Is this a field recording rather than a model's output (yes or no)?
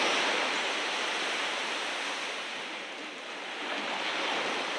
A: no